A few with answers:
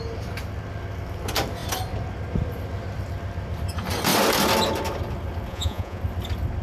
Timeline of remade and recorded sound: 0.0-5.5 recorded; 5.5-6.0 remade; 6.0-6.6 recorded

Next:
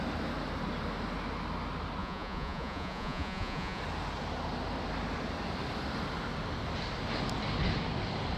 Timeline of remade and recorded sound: 0.0-2.0 recorded; 2.0-3.8 remade; 3.8-8.4 recorded

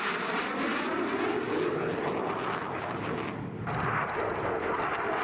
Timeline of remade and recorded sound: 0.0-5.2 recorded